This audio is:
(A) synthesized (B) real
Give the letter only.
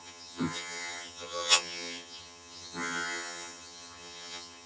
A